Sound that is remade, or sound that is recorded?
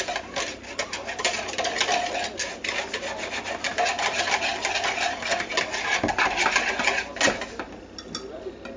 recorded